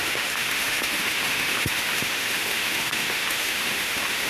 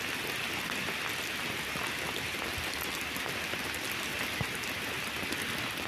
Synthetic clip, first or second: first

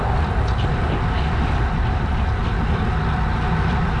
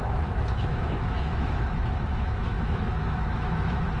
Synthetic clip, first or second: second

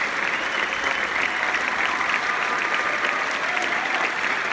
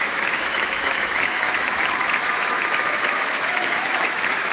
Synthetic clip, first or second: second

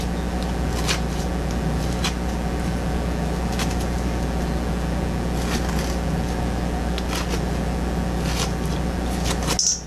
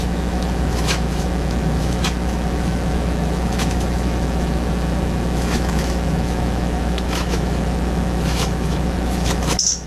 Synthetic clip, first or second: second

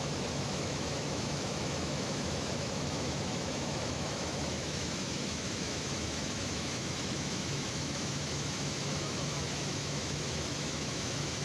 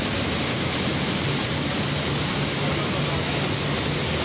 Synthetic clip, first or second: first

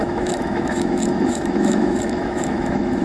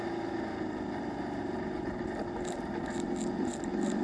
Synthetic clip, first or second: first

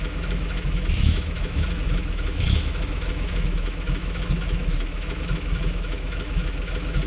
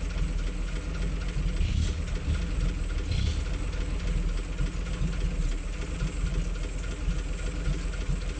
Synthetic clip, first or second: first